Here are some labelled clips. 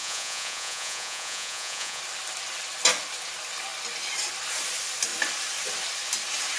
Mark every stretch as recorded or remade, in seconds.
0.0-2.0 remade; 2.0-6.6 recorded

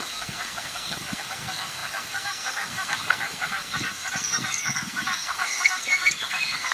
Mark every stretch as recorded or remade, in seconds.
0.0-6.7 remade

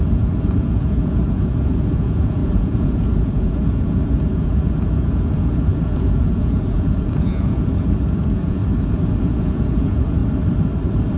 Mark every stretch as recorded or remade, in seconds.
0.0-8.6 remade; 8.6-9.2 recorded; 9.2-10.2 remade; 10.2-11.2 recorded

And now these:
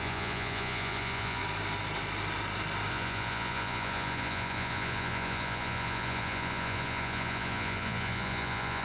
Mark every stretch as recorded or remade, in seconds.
0.0-1.4 remade; 1.4-2.9 recorded; 2.9-8.8 remade

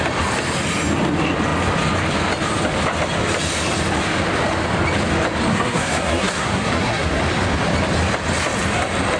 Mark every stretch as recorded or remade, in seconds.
0.0-5.5 recorded; 5.5-7.2 remade; 7.2-9.2 recorded

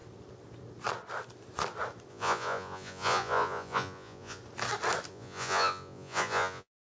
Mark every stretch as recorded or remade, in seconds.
0.0-2.1 recorded; 2.1-4.4 remade; 4.4-5.1 recorded; 5.1-6.9 remade

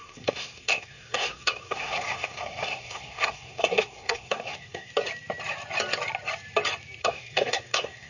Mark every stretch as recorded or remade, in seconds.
0.0-4.9 remade; 4.9-7.0 recorded; 7.0-8.1 remade

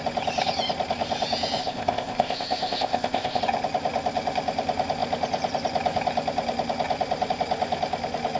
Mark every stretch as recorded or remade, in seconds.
0.0-1.6 recorded; 1.6-3.4 remade; 3.4-8.4 recorded